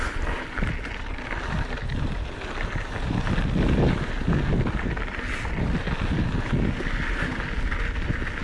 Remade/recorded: recorded